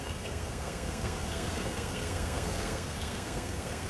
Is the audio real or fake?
fake